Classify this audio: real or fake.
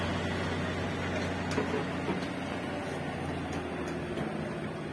real